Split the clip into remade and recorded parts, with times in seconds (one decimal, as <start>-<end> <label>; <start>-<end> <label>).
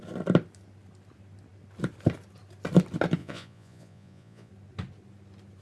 0.0-3.2 recorded; 3.2-4.5 remade; 4.5-5.6 recorded